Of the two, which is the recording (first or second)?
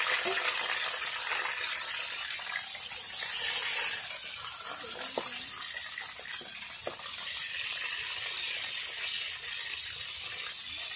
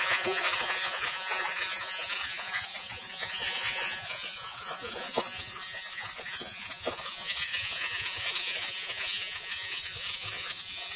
first